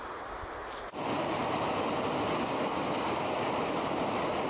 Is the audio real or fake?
real